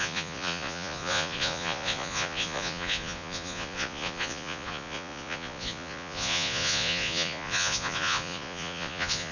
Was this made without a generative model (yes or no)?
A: no